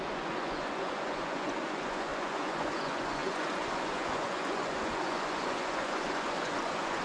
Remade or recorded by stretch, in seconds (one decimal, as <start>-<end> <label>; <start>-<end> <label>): 0.0-7.0 remade